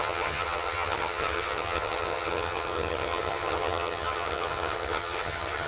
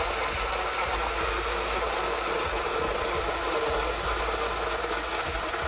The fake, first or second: first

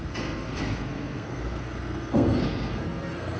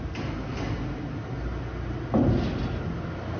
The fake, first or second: first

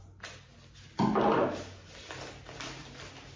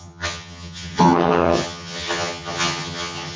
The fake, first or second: second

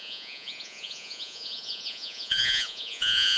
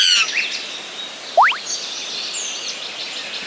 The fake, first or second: first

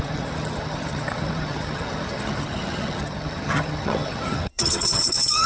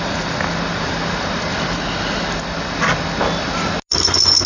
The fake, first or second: first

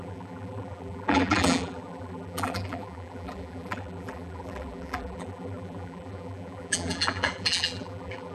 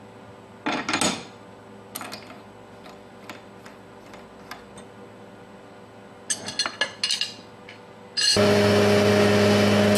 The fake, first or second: first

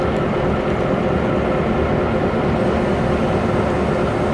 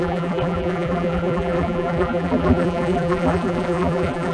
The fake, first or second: second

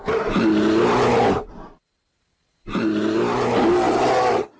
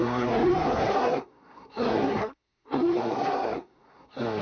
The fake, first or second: second